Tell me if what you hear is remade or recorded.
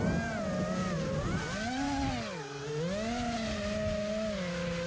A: recorded